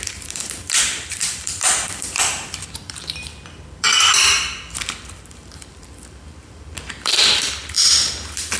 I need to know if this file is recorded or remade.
remade